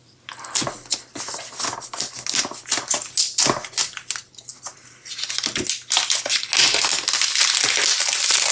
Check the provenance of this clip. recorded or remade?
recorded